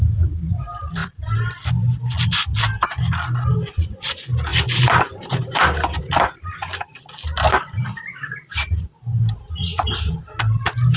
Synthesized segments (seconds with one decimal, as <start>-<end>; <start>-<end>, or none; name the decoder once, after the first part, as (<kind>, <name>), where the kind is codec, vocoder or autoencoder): 1.0-1.5 (vocoder, BigVGAN v2); 4.5-9.4

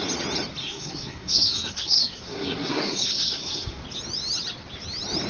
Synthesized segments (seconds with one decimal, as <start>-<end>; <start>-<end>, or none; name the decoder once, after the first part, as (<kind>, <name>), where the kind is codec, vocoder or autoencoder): 0.6-3.8 (codec, SNAC)

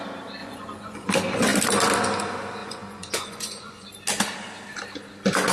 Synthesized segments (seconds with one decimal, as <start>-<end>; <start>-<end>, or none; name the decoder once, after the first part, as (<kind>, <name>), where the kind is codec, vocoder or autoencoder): 0.4-1.1 (vocoder, Vocos); 2.6-3.9

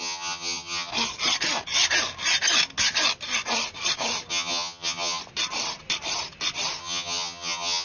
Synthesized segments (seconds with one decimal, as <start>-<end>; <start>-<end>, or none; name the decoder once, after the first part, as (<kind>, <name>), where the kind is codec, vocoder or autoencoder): 0.0-0.9 (vocoder, HiFi-GAN); 4.3-5.2; 6.8-7.8

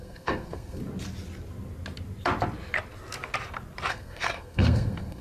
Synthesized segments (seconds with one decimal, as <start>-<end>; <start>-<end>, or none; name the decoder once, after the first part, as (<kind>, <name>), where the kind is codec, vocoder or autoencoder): 0.0-0.8 (codec, SNAC); 3.9-5.2

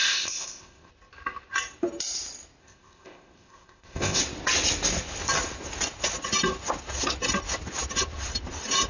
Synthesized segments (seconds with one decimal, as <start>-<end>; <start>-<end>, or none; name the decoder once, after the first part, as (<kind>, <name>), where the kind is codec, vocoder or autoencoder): 0.0-0.9 (codec, ZipCodec); 2.6-4.2

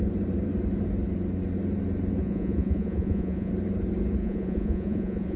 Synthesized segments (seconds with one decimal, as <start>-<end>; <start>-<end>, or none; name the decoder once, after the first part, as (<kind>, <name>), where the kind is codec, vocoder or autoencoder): 2.2-3.5 (vocoder, Vocos); 4.2-5.4